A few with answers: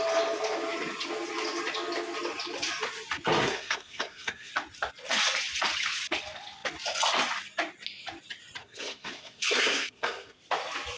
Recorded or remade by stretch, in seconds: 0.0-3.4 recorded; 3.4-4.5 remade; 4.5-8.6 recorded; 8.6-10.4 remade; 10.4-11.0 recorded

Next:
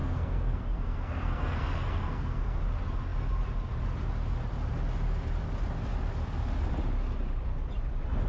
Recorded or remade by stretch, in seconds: 0.0-2.6 remade; 2.6-8.3 recorded

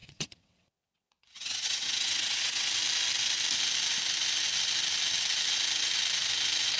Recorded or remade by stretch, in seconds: 0.0-2.7 remade; 2.7-6.8 recorded

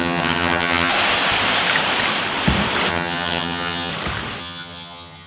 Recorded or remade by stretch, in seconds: 0.0-0.9 remade; 0.9-2.9 recorded; 2.9-3.9 remade; 3.9-4.4 recorded; 4.4-5.3 remade

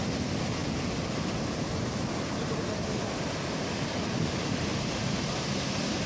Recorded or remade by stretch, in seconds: 0.0-4.7 recorded; 4.7-5.6 remade; 5.6-6.1 recorded

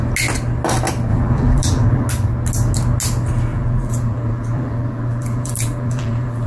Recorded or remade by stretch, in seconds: 0.0-1.1 recorded; 1.1-2.1 remade; 2.1-3.5 recorded; 3.5-6.5 remade

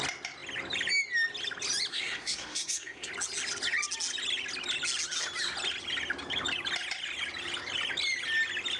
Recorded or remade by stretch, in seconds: 0.0-1.9 recorded; 1.9-3.1 remade; 3.1-8.8 recorded

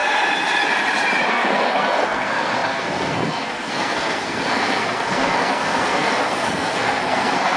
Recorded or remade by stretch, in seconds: 0.0-1.3 recorded; 1.3-7.6 remade